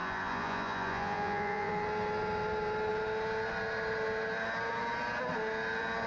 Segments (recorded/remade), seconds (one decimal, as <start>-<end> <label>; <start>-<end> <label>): 0.0-1.7 remade; 1.7-6.1 recorded